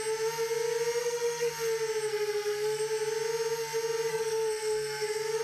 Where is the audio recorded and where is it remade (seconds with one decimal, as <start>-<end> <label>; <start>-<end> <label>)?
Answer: 0.0-1.0 recorded; 1.0-1.5 remade; 1.5-2.1 recorded; 2.1-2.8 remade; 2.8-4.1 recorded; 4.1-5.4 remade

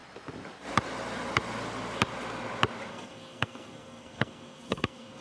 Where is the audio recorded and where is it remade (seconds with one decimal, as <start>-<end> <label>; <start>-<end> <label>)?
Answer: 0.0-2.9 recorded; 2.9-5.2 remade